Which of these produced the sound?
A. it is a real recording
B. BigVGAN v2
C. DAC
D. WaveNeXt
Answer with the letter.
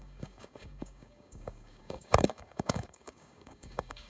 C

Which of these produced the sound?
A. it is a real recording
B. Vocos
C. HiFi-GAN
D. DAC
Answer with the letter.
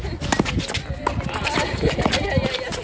A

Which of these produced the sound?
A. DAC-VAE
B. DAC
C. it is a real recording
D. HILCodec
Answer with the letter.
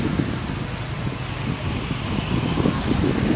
C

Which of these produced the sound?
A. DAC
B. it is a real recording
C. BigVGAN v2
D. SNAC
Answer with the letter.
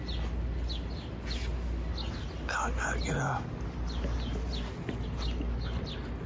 B